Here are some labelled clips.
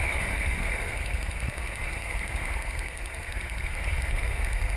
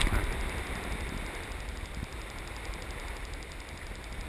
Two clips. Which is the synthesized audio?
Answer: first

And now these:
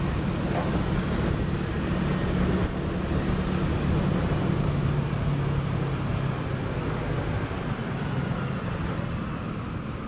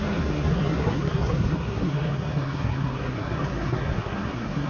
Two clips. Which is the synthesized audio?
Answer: second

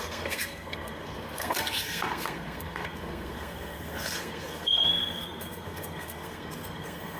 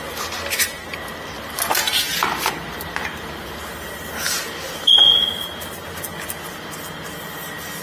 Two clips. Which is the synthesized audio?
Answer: first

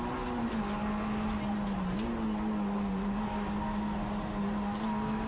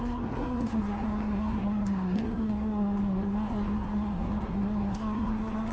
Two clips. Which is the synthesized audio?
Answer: second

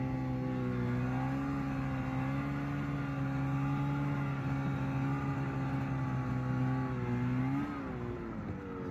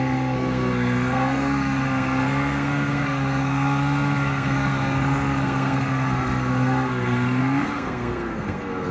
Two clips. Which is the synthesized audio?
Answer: second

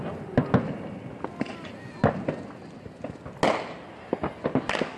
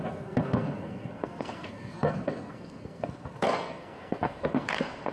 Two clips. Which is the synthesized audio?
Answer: second